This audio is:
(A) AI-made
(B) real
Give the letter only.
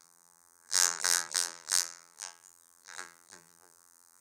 A